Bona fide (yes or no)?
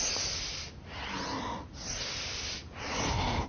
yes